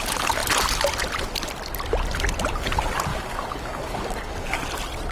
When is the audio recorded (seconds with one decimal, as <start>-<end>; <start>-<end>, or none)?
0.0-3.1; 4.6-5.1